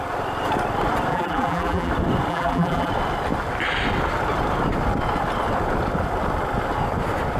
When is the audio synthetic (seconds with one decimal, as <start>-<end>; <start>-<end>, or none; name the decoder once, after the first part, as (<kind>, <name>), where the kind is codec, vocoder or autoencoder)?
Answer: 1.1-1.9 (vocoder, BigVGAN v2); 2.3-2.9